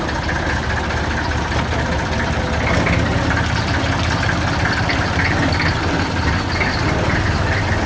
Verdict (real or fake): real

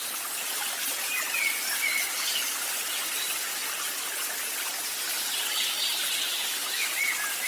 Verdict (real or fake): real